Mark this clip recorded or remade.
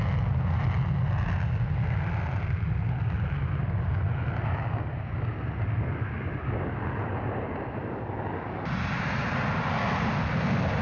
recorded